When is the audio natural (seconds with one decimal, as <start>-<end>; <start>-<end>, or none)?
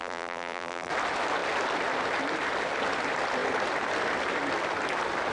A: 0.9-5.3